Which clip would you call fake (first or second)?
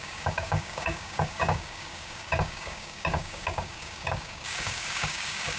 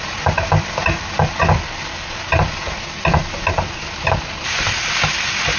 first